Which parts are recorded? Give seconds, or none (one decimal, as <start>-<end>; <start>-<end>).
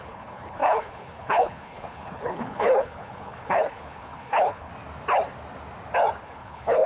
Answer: 4.7-6.2